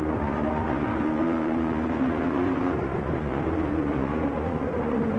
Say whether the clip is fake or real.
fake